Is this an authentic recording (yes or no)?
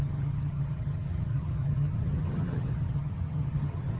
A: no